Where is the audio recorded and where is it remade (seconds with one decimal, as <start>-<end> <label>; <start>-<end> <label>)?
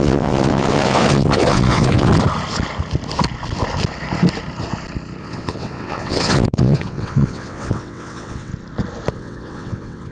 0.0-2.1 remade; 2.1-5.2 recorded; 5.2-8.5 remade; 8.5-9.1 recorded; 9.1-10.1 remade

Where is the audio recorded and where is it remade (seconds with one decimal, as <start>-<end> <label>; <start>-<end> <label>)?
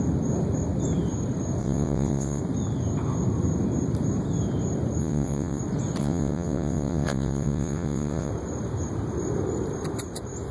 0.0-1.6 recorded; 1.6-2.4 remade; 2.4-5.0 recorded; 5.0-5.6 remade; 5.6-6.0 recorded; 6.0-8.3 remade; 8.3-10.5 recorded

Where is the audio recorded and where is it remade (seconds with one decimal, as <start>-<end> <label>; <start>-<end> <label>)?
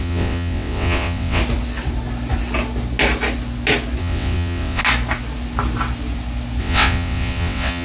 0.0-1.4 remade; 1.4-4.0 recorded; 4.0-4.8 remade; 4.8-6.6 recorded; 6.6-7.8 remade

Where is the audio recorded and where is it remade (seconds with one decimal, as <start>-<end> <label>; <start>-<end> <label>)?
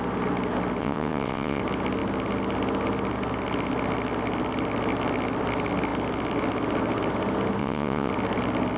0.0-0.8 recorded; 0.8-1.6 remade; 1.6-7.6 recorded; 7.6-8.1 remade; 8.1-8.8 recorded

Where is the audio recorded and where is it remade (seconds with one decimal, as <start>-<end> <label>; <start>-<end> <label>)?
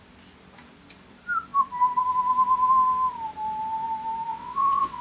0.0-4.3 recorded; 4.3-5.0 remade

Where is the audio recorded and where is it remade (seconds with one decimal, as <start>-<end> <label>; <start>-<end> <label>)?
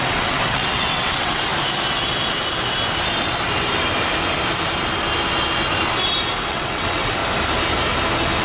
0.0-1.5 remade; 1.5-6.5 recorded; 6.5-7.2 remade; 7.2-8.4 recorded